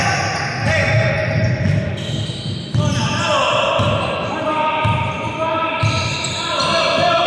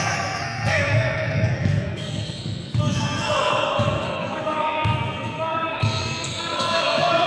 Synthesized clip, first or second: second